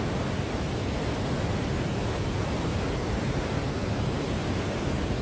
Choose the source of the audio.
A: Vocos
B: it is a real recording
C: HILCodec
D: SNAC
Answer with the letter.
B